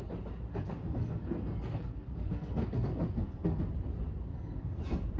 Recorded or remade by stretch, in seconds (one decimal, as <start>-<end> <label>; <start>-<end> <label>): 0.0-0.5 recorded; 0.5-3.6 remade; 3.6-4.3 recorded; 4.3-4.8 remade; 4.8-5.2 recorded